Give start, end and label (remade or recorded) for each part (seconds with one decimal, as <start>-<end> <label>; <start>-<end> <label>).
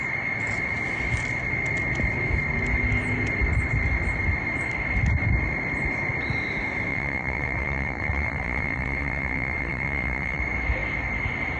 0.0-6.9 recorded; 6.9-10.4 remade; 10.4-11.6 recorded